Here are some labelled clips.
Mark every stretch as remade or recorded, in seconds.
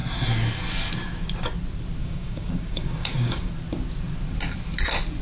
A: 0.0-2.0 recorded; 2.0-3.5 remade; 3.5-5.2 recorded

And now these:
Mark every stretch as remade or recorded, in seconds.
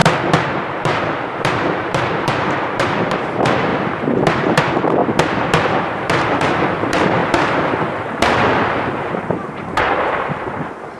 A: 0.0-0.7 recorded; 0.7-3.7 remade; 3.7-4.6 recorded; 4.6-5.0 remade; 5.0-5.8 recorded; 5.8-7.2 remade; 7.2-9.0 recorded; 9.0-11.0 remade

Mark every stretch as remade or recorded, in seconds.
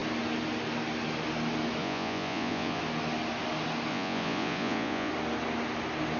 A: 0.0-1.8 recorded; 1.8-2.8 remade; 2.8-3.9 recorded; 3.9-5.1 remade; 5.1-6.2 recorded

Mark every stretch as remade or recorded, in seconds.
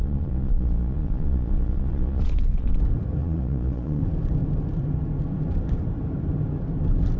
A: 0.0-2.8 remade; 2.8-3.2 recorded; 3.2-4.0 remade; 4.0-7.2 recorded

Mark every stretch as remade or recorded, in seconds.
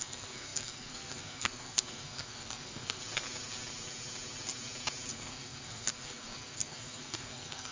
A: 0.0-3.0 remade; 3.0-5.1 recorded; 5.1-7.7 remade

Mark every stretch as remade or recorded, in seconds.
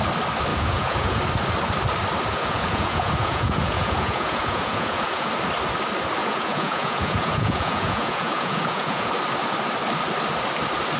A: 0.0-0.5 recorded; 0.5-1.2 remade; 1.2-2.3 recorded; 2.3-5.3 remade; 5.3-6.2 recorded; 6.2-9.1 remade; 9.1-11.0 recorded